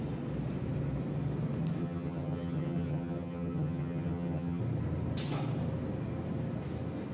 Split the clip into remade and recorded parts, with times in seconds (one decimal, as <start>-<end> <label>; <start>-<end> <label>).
0.0-1.8 recorded; 1.8-4.6 remade; 4.6-7.1 recorded